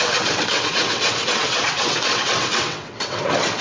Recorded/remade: remade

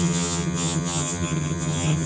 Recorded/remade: remade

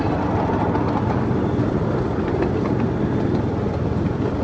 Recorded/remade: recorded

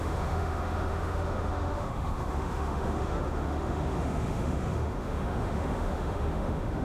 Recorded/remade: remade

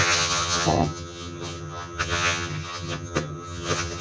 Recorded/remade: remade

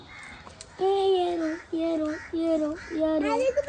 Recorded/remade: recorded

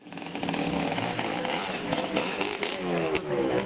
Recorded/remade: remade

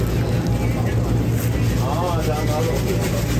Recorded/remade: recorded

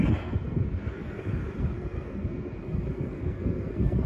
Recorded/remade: remade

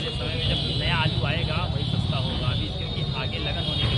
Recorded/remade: recorded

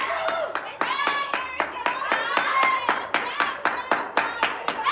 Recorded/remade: recorded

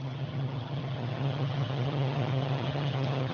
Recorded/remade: remade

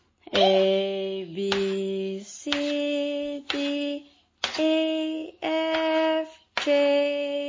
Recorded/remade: recorded